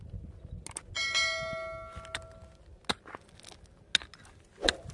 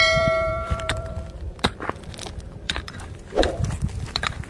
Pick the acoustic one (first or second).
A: first